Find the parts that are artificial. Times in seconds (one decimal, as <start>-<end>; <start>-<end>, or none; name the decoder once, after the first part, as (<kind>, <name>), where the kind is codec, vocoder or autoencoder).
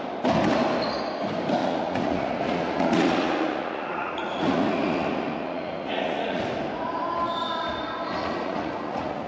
1.6-6.4 (vocoder, Vocos); 8.2-9.3